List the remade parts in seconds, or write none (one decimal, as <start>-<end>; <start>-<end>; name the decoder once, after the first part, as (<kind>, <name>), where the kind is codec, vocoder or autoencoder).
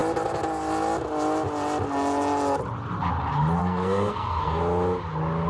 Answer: 3.6-4.6 (codec, SNAC)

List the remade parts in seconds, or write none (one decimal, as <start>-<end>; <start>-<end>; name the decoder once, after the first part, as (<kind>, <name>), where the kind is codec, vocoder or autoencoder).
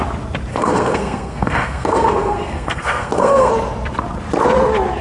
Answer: 0.5-3.5 (codec, SNAC)